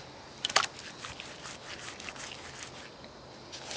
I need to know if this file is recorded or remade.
recorded